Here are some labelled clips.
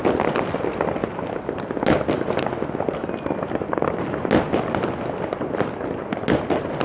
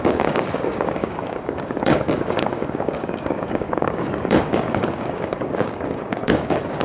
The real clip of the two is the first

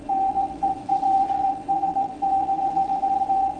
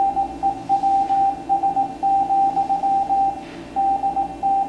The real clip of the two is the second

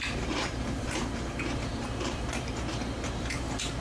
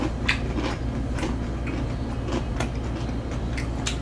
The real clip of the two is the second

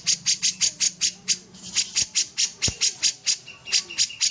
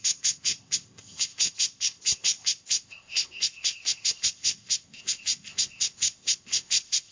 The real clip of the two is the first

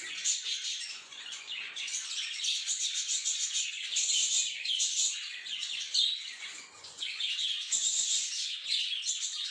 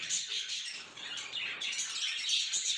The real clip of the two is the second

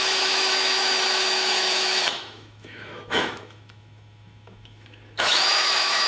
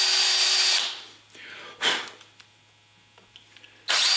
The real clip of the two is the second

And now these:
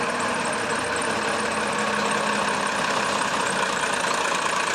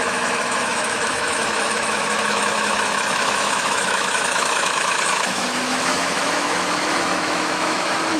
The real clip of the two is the first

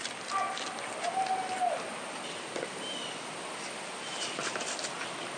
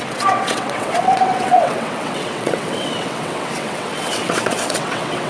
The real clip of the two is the first